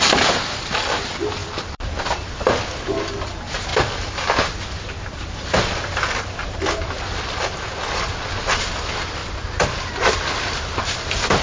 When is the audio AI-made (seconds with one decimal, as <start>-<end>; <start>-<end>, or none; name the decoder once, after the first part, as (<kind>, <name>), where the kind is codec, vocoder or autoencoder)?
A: none